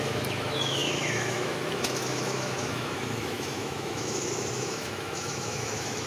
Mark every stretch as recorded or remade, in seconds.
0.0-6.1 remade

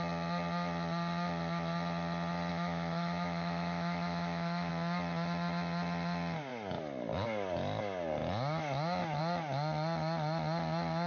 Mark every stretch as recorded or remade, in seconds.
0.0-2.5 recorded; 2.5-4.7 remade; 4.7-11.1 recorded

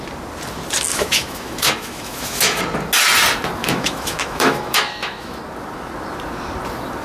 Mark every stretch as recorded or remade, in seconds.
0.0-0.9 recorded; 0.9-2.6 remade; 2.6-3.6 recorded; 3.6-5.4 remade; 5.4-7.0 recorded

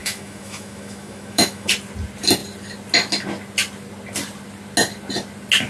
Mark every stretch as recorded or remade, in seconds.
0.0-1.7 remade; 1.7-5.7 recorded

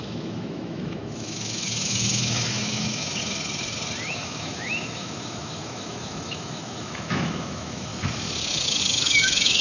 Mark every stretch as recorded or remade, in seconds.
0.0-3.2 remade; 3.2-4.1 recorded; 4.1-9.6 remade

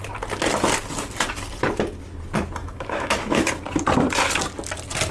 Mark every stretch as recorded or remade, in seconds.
0.0-2.6 recorded; 2.6-3.5 remade; 3.5-5.1 recorded